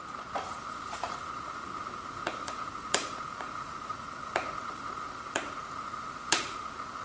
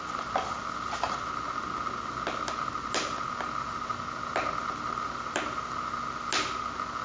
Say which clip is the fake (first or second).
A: first